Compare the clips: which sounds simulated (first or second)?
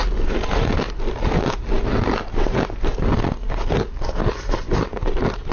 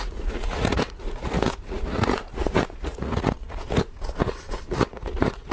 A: second